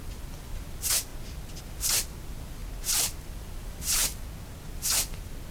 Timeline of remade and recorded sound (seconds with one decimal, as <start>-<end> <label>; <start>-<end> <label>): 0.0-1.1 remade; 1.1-1.6 recorded; 1.6-2.6 remade; 2.6-3.2 recorded; 3.2-4.0 remade; 4.0-5.5 recorded